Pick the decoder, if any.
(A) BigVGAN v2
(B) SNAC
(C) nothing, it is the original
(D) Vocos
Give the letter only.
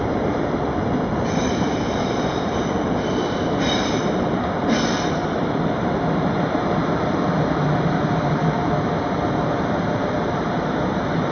A